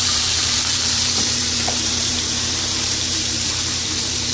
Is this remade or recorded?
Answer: remade